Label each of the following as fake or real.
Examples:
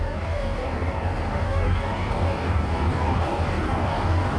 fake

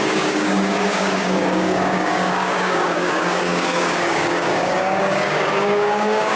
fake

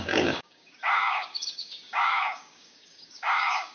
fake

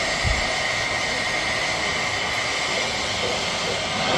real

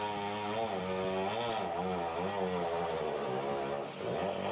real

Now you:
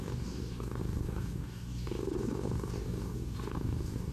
fake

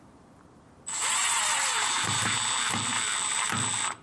real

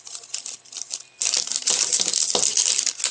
real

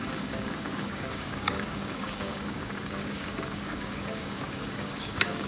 fake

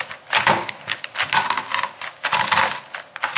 real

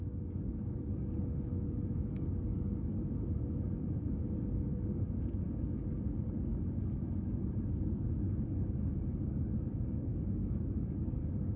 fake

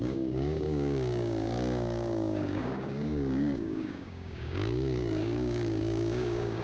fake